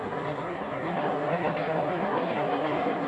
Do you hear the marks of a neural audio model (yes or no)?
yes